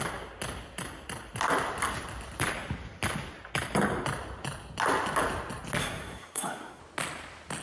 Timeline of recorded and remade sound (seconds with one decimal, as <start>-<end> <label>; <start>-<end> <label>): 0.0-5.8 recorded; 5.8-6.8 remade; 6.8-7.6 recorded